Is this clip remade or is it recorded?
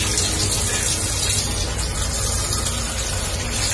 recorded